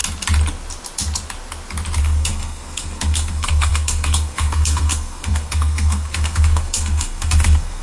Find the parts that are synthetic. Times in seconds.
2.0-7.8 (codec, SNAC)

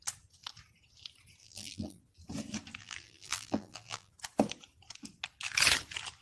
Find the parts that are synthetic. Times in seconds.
1.4-2.0 (vocoder, BigVGAN v2); 2.8-4.1

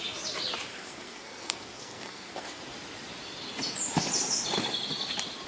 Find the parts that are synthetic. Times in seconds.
0.7-2.6 (codec, SNAC)

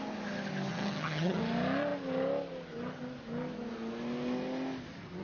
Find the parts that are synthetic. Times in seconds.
0.7-1.4 (vocoder, HiFi-GAN)

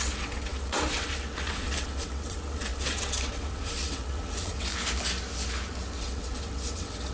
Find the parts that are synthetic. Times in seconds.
0.0-4.7 (vocoder, WaveNeXt); 6.0-7.1

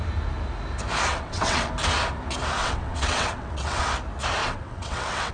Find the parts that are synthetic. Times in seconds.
1.1-1.7 (vocoder, WaveNeXt); 2.6-3.8; 4.4-5.3